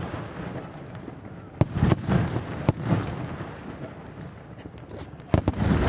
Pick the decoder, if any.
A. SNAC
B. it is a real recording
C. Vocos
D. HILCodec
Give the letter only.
B